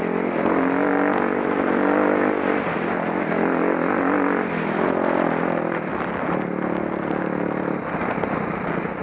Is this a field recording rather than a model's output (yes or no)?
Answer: yes